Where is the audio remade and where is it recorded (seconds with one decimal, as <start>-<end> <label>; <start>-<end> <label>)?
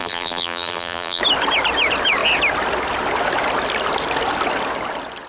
0.0-1.2 remade; 1.2-5.3 recorded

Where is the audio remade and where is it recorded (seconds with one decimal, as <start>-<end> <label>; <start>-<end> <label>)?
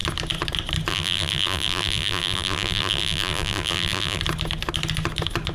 0.0-0.9 recorded; 0.9-4.2 remade; 4.2-5.5 recorded